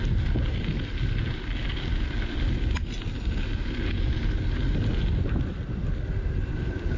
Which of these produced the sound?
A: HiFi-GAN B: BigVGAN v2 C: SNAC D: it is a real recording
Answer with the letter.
D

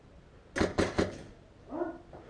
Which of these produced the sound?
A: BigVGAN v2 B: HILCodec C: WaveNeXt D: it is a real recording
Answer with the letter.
D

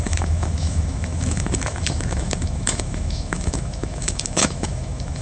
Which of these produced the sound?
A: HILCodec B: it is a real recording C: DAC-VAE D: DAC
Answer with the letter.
C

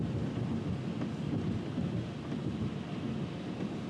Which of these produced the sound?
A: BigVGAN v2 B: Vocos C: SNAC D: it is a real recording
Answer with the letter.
D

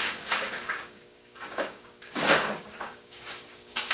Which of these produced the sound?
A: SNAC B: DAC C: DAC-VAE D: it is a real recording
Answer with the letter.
B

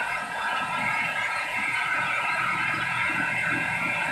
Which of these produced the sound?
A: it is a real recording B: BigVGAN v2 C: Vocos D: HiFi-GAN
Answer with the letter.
C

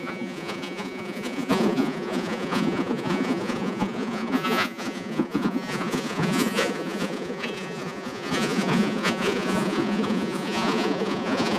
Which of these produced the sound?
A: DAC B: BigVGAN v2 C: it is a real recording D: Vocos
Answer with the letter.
D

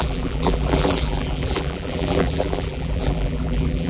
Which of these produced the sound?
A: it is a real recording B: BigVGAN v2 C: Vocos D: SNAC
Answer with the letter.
B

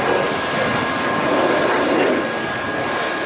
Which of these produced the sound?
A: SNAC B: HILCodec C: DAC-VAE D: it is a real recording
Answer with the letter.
D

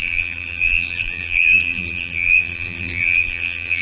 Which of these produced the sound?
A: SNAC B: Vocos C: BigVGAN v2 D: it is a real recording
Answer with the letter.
C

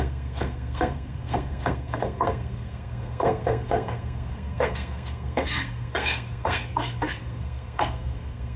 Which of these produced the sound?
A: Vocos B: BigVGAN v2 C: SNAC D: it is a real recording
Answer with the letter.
C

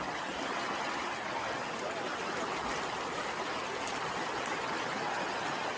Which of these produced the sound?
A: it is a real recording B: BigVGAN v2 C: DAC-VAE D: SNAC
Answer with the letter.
A